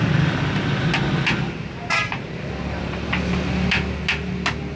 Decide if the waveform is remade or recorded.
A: recorded